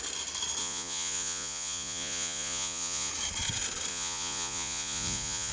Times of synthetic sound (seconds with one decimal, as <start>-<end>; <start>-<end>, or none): 0.6-3.1; 3.9-5.5